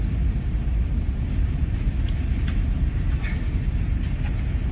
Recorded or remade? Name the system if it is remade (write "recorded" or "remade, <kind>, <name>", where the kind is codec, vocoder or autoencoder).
recorded